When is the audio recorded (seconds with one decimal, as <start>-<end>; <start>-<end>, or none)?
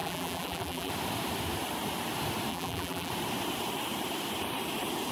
0.9-2.5; 3.1-5.1